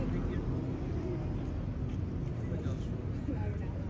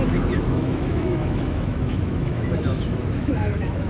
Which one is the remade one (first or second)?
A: second